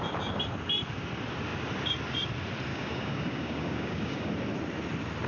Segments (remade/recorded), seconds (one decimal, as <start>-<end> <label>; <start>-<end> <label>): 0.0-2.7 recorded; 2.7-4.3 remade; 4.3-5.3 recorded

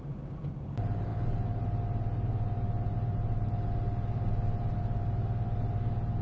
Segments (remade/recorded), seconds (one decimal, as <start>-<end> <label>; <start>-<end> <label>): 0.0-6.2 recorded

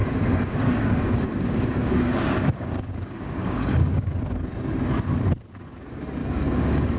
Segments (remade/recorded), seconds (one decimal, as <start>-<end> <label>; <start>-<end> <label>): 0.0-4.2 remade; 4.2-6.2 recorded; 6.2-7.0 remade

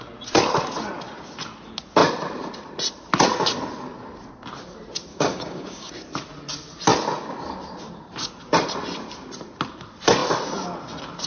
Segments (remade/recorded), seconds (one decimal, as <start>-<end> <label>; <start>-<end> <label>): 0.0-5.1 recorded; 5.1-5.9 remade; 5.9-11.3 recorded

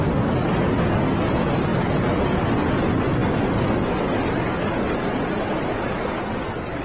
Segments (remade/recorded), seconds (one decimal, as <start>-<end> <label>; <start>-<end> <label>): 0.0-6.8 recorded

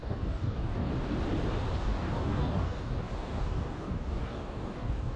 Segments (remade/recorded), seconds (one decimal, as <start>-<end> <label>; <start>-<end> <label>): 0.0-0.9 remade; 0.9-1.8 recorded; 1.8-5.2 remade